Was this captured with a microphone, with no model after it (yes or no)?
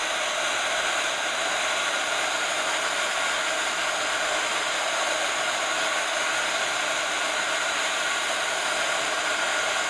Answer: yes